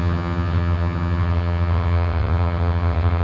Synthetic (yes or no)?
yes